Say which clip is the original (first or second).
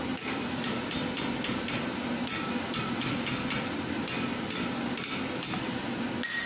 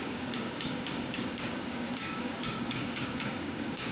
first